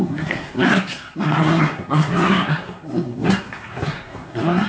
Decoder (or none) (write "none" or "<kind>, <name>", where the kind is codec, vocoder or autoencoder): codec, SNAC